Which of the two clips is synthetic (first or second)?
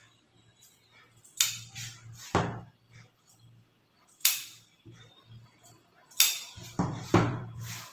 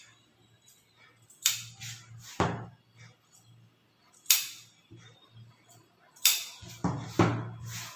first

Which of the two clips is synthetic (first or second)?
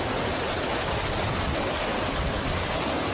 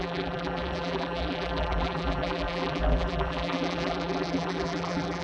second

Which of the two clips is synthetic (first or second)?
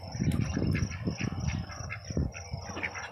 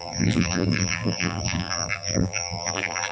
second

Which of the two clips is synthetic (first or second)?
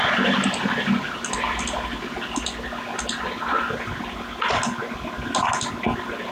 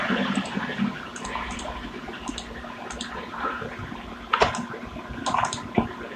second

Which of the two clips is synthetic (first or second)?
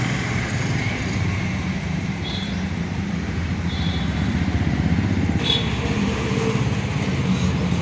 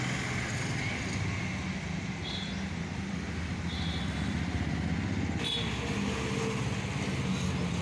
first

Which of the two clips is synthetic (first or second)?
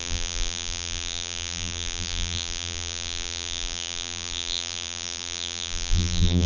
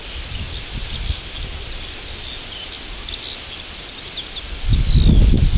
first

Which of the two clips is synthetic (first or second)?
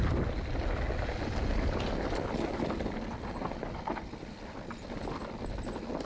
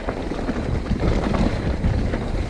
second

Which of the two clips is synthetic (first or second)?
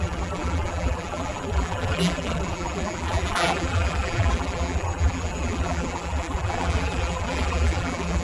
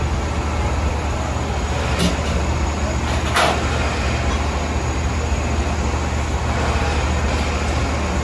first